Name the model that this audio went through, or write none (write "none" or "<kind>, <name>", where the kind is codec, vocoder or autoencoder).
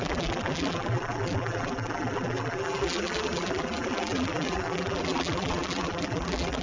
vocoder, BigVGAN v2